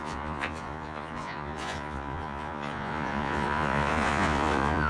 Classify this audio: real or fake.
fake